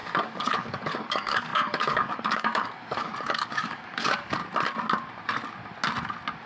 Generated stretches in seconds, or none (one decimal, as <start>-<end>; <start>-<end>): 0.0-4.4

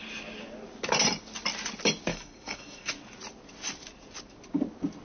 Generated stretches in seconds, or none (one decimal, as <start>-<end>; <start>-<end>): 2.1-2.9

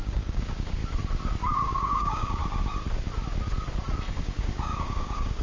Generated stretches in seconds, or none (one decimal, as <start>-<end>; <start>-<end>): 0.0-0.8; 1.5-2.4; 4.1-5.4

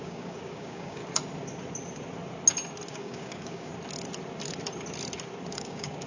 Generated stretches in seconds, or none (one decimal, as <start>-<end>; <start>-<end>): 0.0-1.0; 2.9-3.7; 5.5-6.1